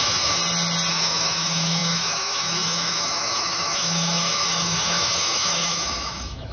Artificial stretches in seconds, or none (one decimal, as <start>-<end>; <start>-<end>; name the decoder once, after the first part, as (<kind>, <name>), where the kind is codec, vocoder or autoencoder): 0.0-0.4 (autoencoder, DAC-VAE); 0.9-6.5

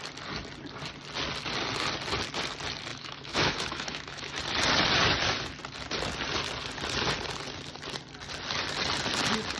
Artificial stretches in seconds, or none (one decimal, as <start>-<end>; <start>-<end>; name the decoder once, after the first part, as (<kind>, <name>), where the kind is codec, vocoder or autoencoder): 2.9-4.4 (autoencoder, DAC-VAE)

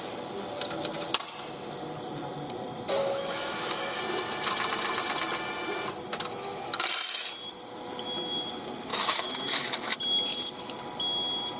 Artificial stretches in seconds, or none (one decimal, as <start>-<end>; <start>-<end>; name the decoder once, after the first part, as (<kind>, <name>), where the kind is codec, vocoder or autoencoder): 3.0-4.0 (autoencoder, DAC-VAE); 8.9-9.9

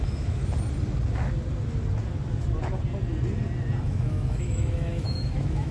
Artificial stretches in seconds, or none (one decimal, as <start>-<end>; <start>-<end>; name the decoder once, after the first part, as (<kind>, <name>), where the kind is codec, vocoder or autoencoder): 0.0-0.4 (autoencoder, DAC-VAE); 3.8-5.7

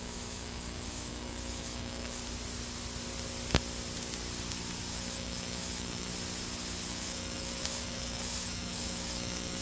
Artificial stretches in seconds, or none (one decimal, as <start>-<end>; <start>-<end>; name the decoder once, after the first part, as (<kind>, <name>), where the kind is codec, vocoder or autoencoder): 0.0-2.2 (autoencoder, DAC-VAE); 4.9-6.1; 6.9-9.6

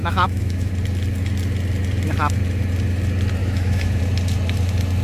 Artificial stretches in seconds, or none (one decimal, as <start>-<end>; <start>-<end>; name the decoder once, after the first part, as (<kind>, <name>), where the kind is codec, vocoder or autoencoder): 0.0-0.7 (autoencoder, DAC-VAE); 3.4-4.0

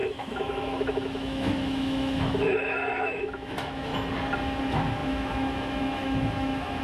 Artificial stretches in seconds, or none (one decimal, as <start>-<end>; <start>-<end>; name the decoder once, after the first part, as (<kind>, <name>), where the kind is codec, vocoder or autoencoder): 0.0-3.9 (autoencoder, DAC-VAE); 4.6-6.8

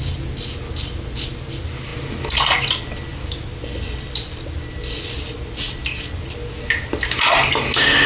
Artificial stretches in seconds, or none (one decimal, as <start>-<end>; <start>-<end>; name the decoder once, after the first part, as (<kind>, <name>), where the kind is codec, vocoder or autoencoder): none